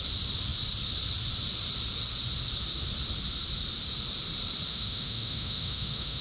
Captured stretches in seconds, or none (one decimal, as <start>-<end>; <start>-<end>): 0.0-4.7